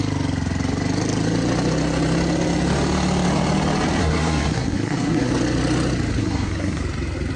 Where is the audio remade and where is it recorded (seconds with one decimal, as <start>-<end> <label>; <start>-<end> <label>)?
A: 0.0-4.0 recorded; 4.0-5.3 remade; 5.3-6.2 recorded; 6.2-6.8 remade; 6.8-7.4 recorded